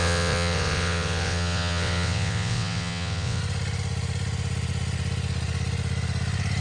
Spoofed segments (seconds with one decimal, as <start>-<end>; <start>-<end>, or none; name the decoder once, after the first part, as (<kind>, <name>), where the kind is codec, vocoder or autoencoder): 0.0-3.4 (vocoder, WaveNeXt)